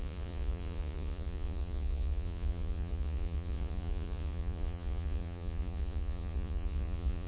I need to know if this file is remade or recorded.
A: remade